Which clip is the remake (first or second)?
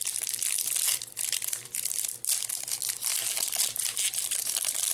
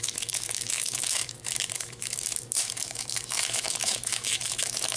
second